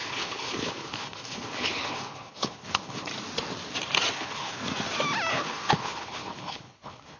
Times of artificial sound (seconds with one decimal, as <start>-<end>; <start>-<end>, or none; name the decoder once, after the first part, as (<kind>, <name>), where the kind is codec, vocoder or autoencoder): 0.0-3.1 (codec, HILCodec); 4.1-4.6; 5.3-7.2